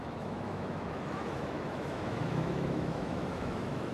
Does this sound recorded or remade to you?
remade